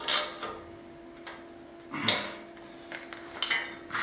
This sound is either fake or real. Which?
real